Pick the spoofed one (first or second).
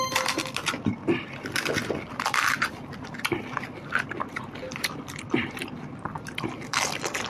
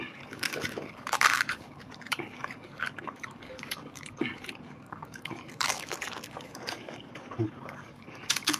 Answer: second